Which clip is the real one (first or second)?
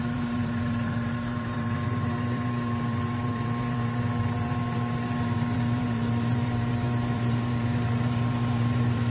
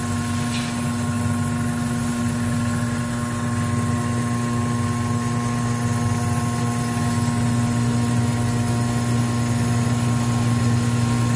second